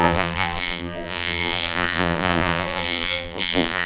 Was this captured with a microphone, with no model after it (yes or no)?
no